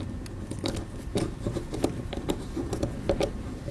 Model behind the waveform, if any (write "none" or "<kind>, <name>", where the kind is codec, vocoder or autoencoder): none